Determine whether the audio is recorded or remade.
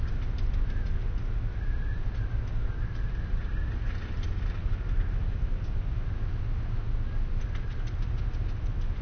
recorded